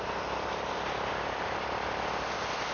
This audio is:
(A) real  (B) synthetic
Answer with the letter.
A